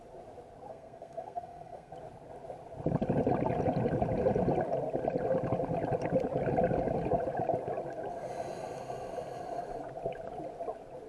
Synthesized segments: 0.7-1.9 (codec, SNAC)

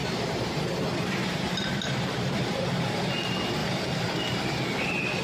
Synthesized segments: 0.0-3.1 (vocoder, BigVGAN v2); 3.6-4.4